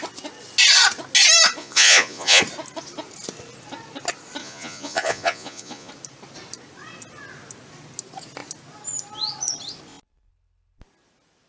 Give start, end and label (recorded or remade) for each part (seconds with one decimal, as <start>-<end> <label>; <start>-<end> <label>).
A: 0.0-1.6 recorded; 1.6-2.4 remade; 2.4-4.4 recorded; 4.4-5.9 remade; 5.9-11.5 recorded